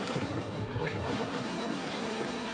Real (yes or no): no